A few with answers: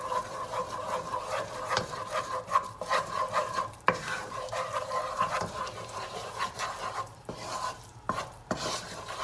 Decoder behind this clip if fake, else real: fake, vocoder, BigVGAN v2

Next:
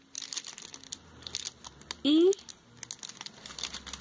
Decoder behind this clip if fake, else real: real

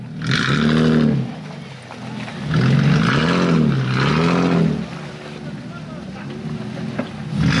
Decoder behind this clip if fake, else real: real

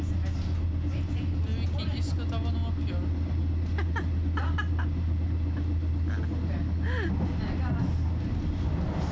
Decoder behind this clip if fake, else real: real